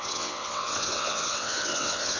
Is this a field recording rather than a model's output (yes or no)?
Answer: no